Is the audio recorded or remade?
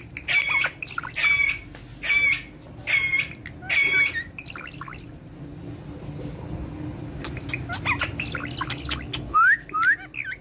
recorded